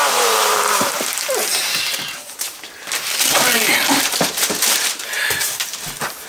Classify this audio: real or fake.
fake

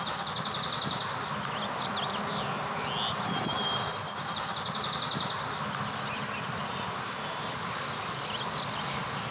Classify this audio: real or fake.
real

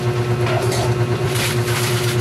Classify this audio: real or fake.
fake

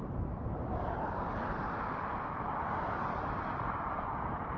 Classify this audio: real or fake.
fake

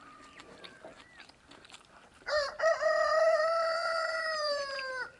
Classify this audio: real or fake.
fake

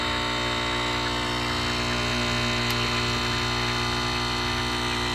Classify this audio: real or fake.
real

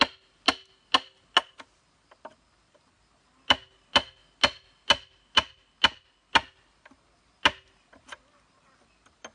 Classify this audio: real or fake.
real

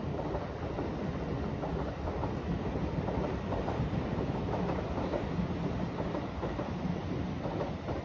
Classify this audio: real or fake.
fake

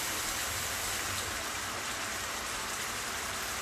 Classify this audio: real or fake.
fake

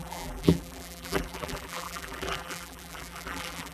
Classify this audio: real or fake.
fake